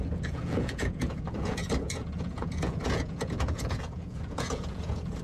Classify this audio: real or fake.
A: fake